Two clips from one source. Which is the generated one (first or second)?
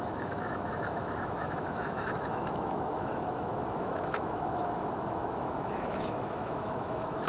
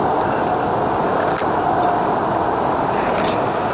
first